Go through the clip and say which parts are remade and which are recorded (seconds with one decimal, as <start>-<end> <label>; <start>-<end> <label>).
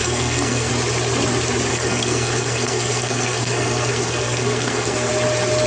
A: 0.0-0.7 remade; 0.7-1.7 recorded; 1.7-5.1 remade; 5.1-5.7 recorded